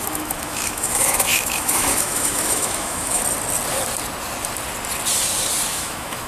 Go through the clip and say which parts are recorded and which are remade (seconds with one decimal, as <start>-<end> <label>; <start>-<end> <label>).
0.0-3.2 remade; 3.2-5.7 recorded; 5.7-6.3 remade